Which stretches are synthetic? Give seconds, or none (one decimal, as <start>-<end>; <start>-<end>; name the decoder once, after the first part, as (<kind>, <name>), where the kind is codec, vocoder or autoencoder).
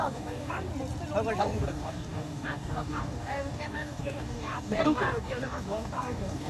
0.0-0.7 (codec, DAC); 1.4-6.5